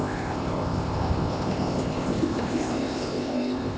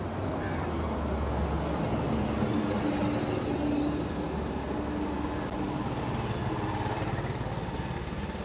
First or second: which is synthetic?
first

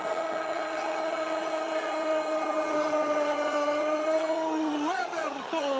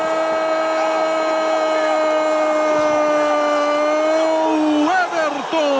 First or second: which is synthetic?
first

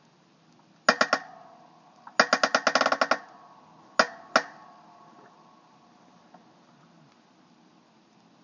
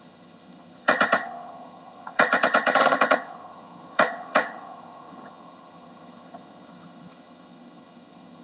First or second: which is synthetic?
second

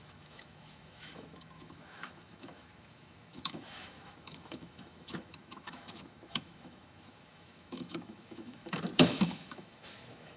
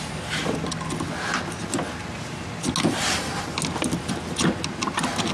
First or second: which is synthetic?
first